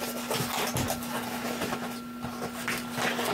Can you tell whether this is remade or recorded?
recorded